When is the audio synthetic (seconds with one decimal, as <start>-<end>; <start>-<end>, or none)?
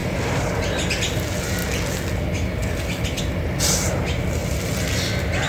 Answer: none